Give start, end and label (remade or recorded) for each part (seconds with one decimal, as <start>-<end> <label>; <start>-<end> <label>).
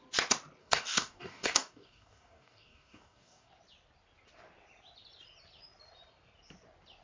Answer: 0.0-0.6 recorded; 0.6-3.5 remade; 3.5-7.0 recorded